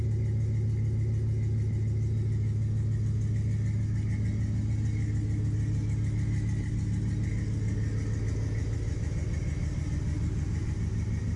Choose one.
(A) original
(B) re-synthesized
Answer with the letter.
A